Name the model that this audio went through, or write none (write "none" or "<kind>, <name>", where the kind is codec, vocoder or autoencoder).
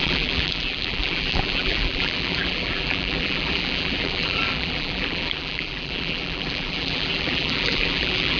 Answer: vocoder, BigVGAN v2